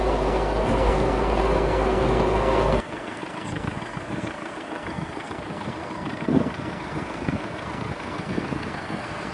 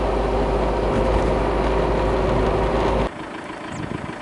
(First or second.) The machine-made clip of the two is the first